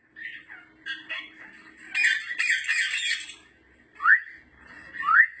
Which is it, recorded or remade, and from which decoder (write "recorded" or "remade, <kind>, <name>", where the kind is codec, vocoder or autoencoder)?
recorded